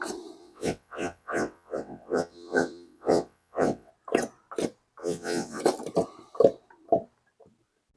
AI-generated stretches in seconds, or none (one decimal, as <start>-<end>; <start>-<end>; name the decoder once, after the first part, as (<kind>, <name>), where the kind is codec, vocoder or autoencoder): 0.4-3.9 (vocoder, WaveNeXt); 5.0-5.6